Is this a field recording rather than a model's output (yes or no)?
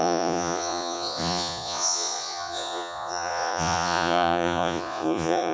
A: no